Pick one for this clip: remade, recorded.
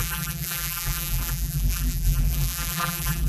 remade